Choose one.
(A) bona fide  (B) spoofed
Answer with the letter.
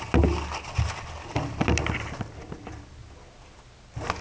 A